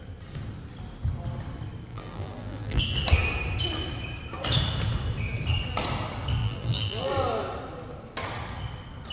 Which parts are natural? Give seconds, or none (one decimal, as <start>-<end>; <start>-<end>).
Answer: 0.0-1.9; 2.8-6.4; 7.1-9.1